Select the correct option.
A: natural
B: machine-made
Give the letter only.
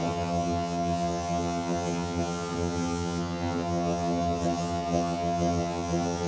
B